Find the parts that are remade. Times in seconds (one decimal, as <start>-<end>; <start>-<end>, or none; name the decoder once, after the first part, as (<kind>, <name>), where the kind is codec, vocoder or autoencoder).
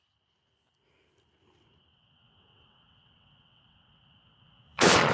1.9-5.1 (vocoder, WaveNeXt)